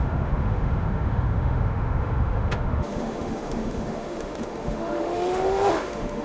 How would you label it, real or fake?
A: fake